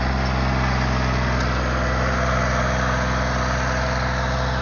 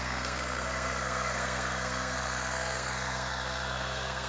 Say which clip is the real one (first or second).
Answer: first